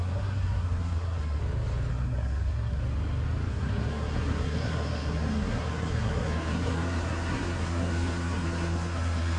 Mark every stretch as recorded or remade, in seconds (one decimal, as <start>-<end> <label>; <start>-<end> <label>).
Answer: 0.0-1.4 remade; 1.4-1.9 recorded; 1.9-2.8 remade; 2.8-3.5 recorded; 3.5-9.4 remade